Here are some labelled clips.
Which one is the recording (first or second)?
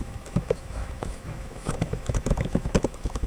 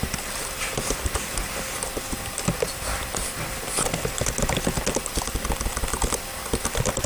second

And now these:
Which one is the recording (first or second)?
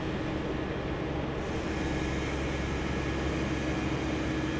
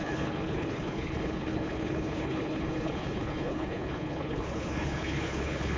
first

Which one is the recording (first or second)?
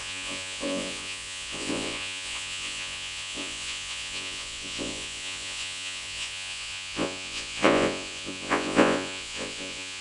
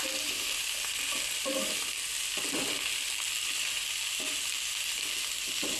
second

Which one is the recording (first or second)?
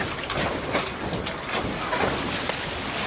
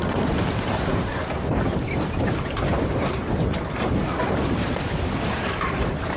first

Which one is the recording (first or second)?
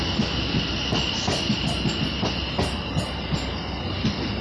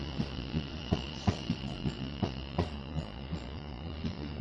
first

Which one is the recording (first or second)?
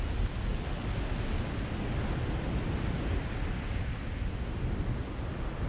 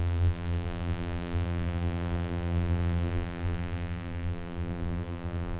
first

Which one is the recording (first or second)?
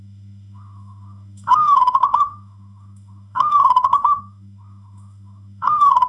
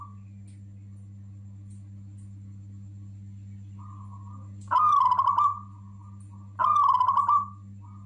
second